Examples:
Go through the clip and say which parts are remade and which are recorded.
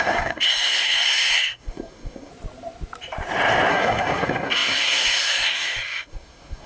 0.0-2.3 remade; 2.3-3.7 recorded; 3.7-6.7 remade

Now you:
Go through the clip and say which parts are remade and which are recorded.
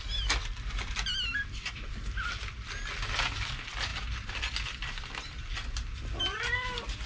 0.0-7.1 recorded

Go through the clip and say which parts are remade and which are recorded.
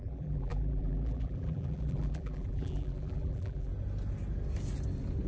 0.0-3.7 remade; 3.7-5.3 recorded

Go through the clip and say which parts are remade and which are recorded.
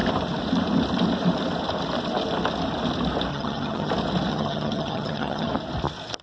0.0-3.3 recorded; 3.3-3.9 remade; 3.9-4.3 recorded; 4.3-5.5 remade; 5.5-6.2 recorded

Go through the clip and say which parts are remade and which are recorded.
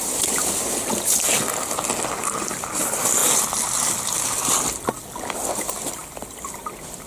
0.0-2.2 recorded; 2.2-2.8 remade; 2.8-6.0 recorded; 6.0-6.5 remade; 6.5-7.1 recorded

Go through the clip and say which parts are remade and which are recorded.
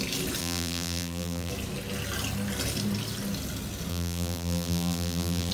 0.0-0.4 recorded; 0.4-1.5 remade; 1.5-3.9 recorded; 3.9-5.5 remade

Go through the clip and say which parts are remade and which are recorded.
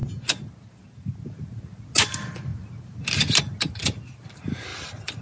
0.0-4.7 recorded; 4.7-5.2 remade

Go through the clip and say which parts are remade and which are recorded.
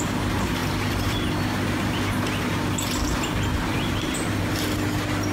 0.0-3.5 recorded; 3.5-4.5 remade; 4.5-5.3 recorded